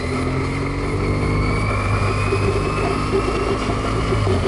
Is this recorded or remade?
recorded